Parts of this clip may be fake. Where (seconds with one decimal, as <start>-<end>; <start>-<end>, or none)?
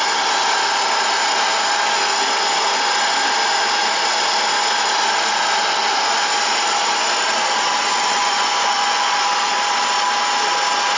8.2-9.1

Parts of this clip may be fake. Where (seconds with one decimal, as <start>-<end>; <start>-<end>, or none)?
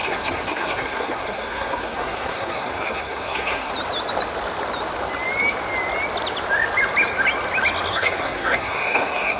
0.0-3.7; 7.9-9.4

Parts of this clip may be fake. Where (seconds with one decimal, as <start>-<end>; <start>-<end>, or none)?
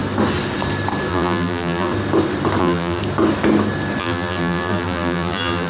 1.1-1.9; 2.6-3.0; 4.0-5.7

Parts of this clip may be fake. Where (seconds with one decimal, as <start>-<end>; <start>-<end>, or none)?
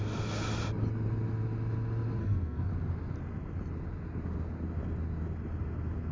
2.2-2.7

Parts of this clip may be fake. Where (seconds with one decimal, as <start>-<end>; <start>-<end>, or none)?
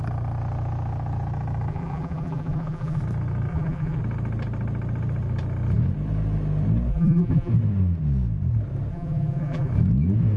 1.7-3.0; 3.5-4.0; 6.9-7.5; 8.9-9.7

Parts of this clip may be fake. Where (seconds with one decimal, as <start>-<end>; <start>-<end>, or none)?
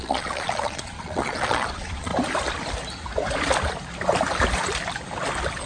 0.0-2.1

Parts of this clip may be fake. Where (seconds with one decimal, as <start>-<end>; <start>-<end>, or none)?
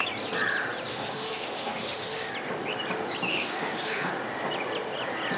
0.9-2.3; 3.3-4.1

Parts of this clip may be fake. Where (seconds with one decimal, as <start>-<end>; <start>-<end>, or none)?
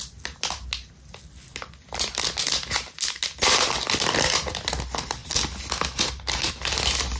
none